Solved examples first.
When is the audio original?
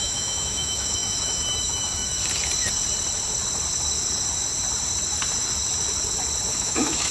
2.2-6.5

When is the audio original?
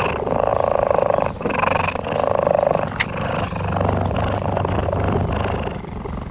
0.0-6.3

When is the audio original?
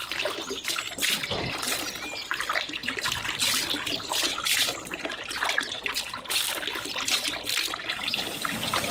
0.0-2.8; 3.4-4.3; 6.4-8.9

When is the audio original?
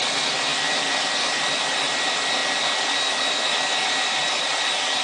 0.0-5.0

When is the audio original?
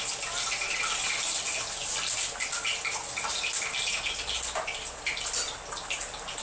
0.0-6.4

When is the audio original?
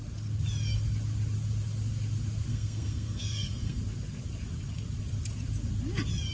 0.0-2.5; 3.8-6.3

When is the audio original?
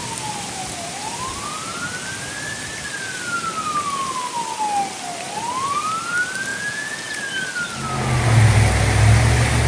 0.0-6.5; 7.2-9.7